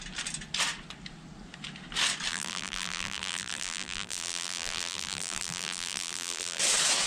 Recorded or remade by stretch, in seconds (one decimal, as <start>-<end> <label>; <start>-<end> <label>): 0.0-2.3 recorded; 2.3-6.6 remade; 6.6-7.1 recorded